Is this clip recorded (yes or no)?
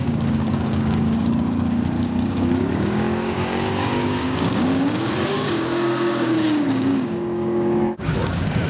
no